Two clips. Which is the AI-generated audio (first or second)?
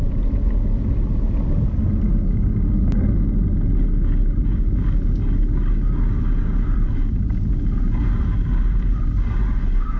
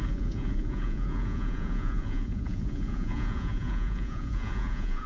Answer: second